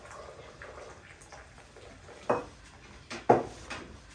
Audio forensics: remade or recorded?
recorded